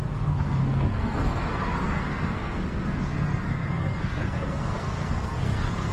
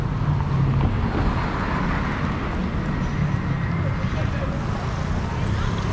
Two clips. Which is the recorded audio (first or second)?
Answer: second